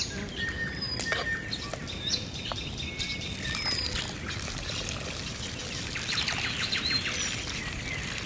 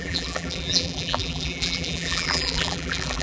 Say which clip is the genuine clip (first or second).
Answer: first